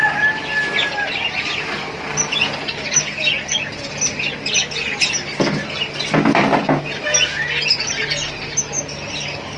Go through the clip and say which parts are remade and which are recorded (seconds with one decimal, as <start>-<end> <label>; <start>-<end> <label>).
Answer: 0.0-9.6 recorded